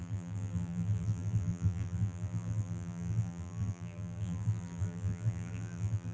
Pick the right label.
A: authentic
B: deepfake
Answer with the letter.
B